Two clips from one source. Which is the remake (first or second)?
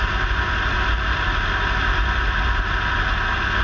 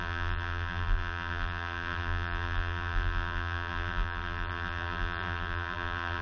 second